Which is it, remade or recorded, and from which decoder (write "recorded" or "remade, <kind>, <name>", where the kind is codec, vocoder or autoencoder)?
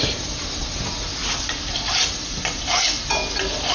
recorded